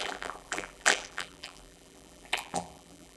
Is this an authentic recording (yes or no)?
no